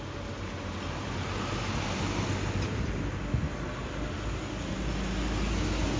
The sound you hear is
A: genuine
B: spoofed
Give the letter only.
A